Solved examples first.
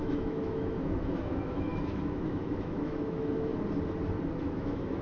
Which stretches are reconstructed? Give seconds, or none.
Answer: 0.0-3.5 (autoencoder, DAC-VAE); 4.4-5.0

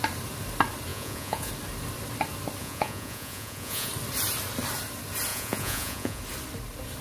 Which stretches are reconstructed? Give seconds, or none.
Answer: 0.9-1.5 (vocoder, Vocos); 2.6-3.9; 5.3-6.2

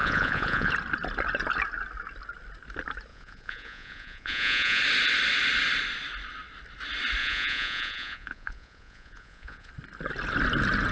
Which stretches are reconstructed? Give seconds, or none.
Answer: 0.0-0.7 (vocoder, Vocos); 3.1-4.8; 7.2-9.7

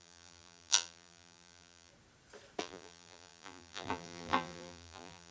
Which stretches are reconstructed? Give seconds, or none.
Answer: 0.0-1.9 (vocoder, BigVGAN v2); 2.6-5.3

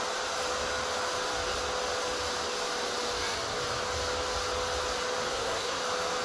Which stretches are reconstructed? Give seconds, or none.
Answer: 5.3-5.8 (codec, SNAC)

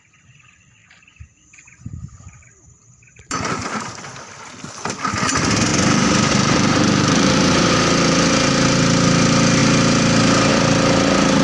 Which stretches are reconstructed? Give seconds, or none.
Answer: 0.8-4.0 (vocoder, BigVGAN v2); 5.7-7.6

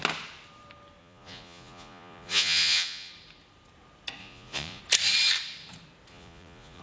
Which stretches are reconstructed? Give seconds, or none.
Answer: 1.0-3.1 (vocoder, Vocos); 4.2-4.8; 6.1-6.8

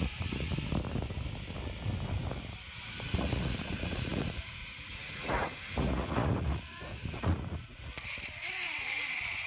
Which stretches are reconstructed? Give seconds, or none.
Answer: 0.0-0.5 (vocoder, Vocos); 3.1-7.9; 8.9-9.5